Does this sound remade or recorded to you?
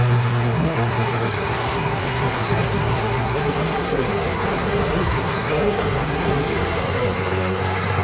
remade